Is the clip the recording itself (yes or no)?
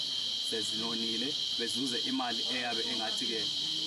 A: yes